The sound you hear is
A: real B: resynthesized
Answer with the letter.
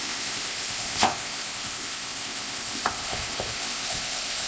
B